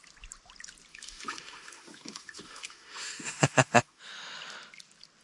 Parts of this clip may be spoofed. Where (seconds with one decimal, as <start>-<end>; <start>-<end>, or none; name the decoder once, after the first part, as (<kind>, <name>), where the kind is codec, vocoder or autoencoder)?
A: 0.9-4.0 (autoencoder, DAC-VAE)